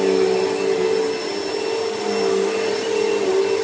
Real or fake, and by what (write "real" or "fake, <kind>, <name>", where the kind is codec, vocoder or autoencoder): real